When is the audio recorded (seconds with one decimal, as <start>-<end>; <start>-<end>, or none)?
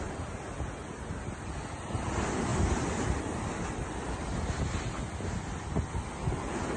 0.0-6.8